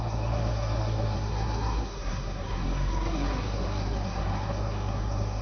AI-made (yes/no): yes